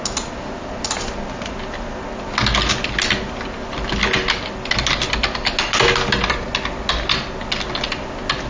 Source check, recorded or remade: recorded